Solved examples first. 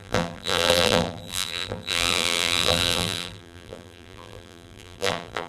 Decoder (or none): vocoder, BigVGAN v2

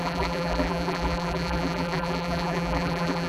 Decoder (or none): vocoder, BigVGAN v2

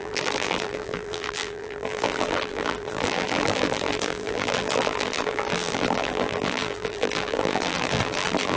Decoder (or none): vocoder, BigVGAN v2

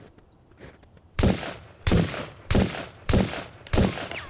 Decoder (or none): vocoder, BigVGAN v2